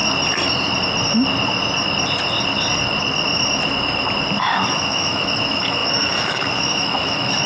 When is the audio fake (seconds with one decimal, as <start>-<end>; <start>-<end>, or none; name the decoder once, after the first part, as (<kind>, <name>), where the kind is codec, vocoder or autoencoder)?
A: 4.4-7.5 (autoencoder, DAC-VAE)